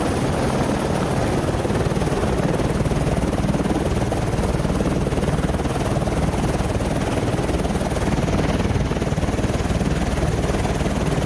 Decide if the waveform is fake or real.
real